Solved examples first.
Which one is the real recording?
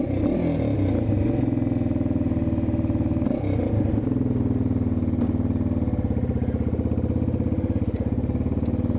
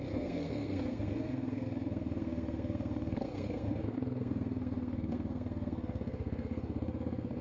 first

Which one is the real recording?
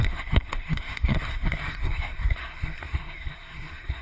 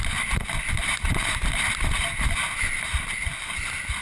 second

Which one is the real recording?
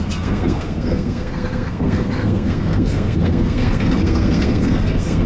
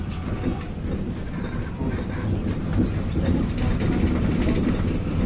second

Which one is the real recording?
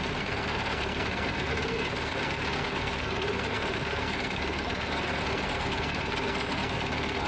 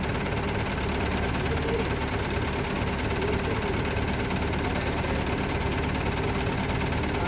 second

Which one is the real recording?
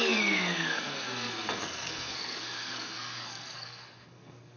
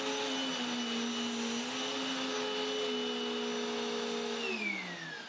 second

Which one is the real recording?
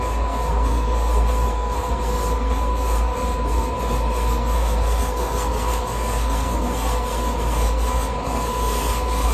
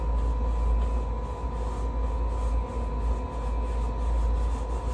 second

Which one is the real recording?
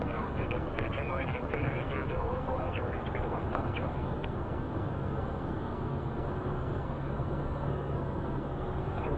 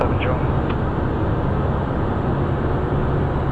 second